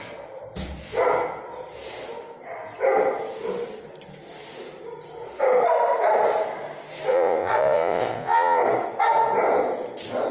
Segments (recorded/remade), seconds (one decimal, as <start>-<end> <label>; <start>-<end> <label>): 0.0-7.1 recorded; 7.1-8.6 remade; 8.6-10.3 recorded